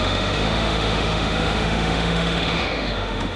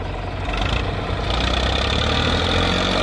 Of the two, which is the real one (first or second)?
second